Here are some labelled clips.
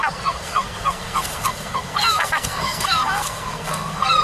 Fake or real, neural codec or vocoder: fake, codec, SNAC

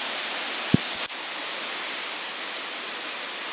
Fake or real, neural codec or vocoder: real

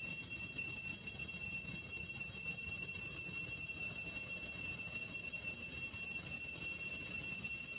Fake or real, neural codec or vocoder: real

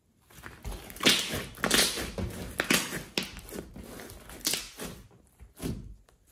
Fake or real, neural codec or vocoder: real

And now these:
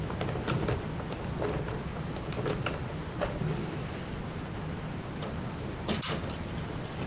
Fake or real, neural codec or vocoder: real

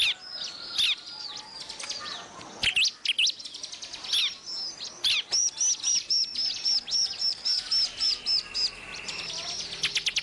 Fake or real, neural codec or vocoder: real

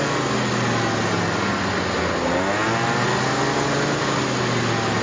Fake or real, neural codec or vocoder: real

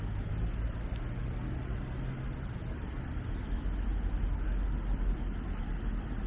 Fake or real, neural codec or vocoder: real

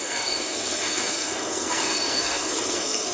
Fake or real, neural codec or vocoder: fake, codec, SNAC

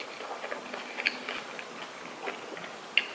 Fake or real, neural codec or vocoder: real